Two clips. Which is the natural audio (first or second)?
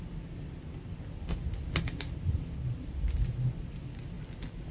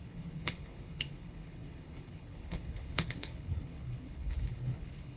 first